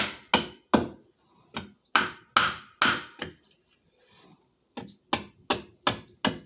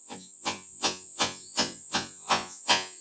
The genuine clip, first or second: first